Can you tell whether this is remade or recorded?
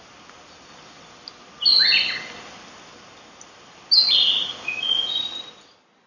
recorded